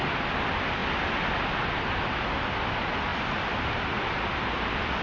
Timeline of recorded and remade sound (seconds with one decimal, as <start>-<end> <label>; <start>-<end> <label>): 0.0-5.0 recorded